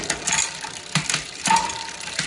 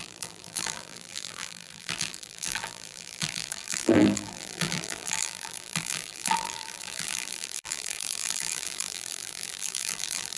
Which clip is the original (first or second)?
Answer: first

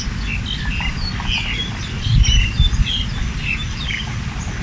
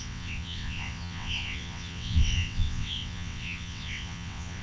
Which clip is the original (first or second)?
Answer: first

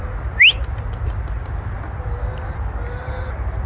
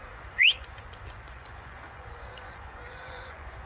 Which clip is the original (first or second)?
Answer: first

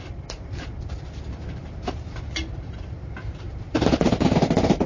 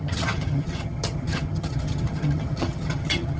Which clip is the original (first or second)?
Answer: first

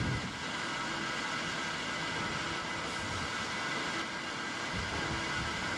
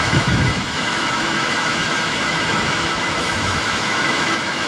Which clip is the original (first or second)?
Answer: first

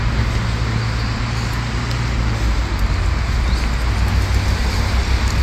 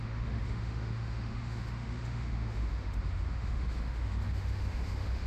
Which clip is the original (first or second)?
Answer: first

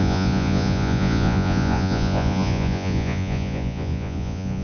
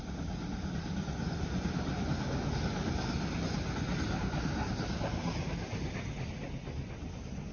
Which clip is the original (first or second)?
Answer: second